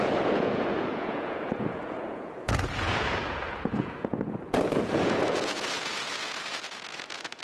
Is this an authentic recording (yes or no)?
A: no